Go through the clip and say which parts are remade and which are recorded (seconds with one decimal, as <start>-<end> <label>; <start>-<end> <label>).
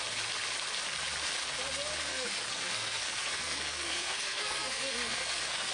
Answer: 0.0-2.0 recorded; 2.0-5.7 remade